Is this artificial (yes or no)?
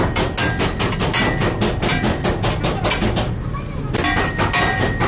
no